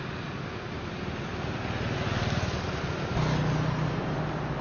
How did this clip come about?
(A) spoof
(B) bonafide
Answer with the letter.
B